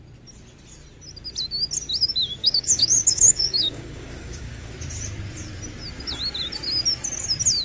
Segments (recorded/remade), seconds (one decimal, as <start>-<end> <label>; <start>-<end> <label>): 0.0-2.4 recorded; 2.4-4.7 remade; 4.7-7.6 recorded